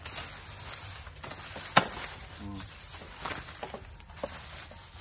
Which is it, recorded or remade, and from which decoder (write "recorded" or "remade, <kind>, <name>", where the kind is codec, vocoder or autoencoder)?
recorded